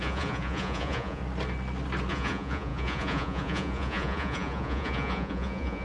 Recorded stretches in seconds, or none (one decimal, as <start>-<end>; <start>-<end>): 1.2-2.1